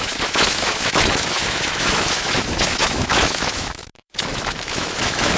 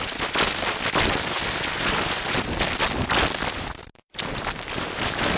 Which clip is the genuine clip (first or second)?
second